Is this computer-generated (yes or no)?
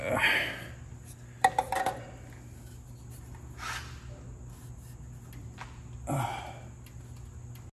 no